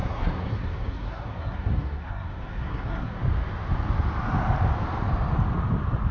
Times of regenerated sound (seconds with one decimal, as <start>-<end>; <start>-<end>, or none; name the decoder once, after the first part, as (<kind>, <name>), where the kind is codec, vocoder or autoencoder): 0.0-3.2 (codec, SNAC)